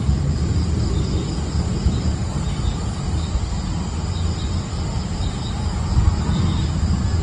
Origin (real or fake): real